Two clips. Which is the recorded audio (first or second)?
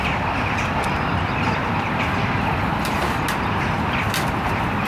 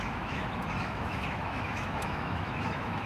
first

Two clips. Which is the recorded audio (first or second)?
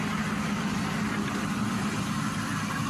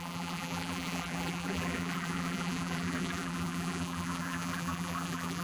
first